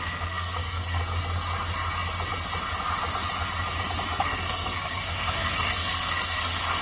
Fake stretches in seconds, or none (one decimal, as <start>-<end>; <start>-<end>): 0.0-1.0; 4.2-6.8